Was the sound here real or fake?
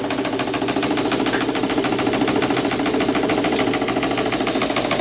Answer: real